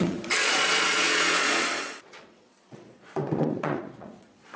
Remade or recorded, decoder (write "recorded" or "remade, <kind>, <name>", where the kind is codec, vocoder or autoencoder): remade, vocoder, Vocos